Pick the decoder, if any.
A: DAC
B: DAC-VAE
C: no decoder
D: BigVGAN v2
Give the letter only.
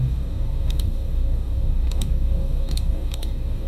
A